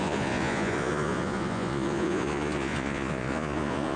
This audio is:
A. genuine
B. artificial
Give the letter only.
B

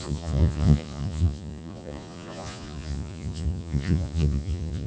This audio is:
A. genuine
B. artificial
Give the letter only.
B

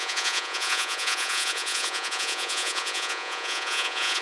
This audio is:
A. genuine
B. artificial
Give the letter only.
B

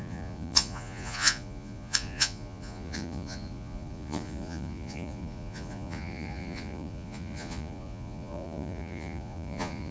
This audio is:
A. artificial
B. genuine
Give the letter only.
A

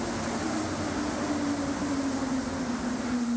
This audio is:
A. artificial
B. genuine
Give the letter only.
B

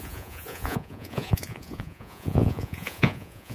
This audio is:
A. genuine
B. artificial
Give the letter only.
B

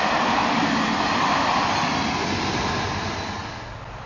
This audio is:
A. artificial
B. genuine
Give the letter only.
B